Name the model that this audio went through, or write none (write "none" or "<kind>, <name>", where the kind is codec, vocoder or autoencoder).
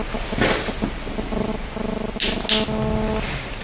none